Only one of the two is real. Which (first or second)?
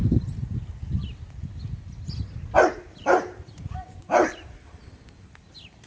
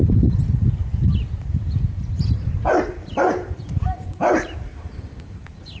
first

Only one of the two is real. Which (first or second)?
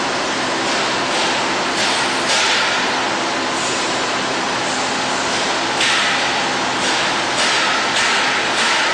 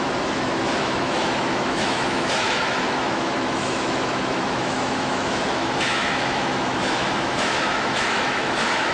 first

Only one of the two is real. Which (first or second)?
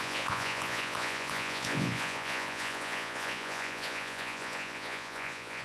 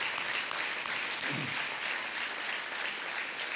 second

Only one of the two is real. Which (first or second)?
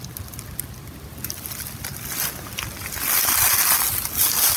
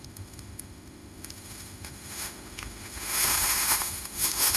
first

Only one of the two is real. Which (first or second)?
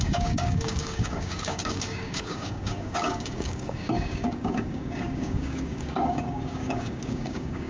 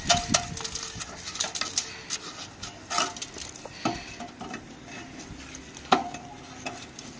second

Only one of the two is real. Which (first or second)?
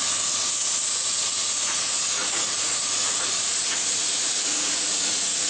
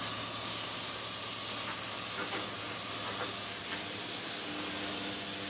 second